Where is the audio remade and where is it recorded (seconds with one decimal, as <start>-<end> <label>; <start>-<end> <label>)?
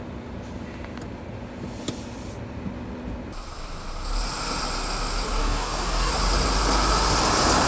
0.0-5.4 recorded; 5.4-6.1 remade; 6.1-7.7 recorded